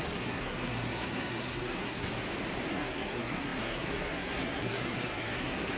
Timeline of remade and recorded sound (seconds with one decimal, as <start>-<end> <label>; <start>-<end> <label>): 0.0-2.1 remade; 2.1-2.7 recorded; 2.7-5.8 remade